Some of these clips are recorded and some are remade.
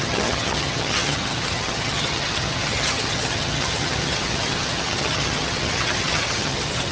remade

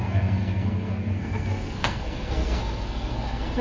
remade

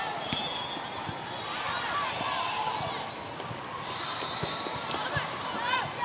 recorded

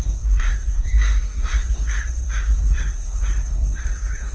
remade